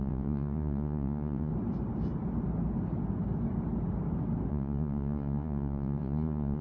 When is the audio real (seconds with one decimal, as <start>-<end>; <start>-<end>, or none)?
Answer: 1.5-4.5